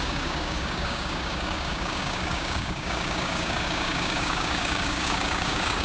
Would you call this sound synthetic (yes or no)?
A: yes